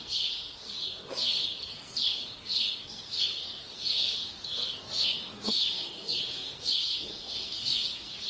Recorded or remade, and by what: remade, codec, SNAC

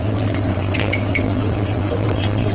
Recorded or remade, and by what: remade, vocoder, WaveNeXt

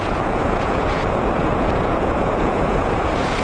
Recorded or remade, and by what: remade, vocoder, Vocos